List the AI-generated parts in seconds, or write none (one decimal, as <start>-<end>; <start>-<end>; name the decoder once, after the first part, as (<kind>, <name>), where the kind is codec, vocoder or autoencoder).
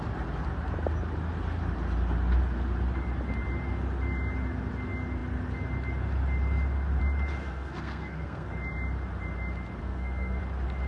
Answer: 7.4-8.5 (codec, SNAC); 9.8-10.4